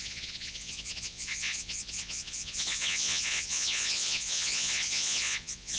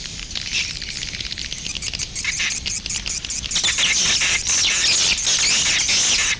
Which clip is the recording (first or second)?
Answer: second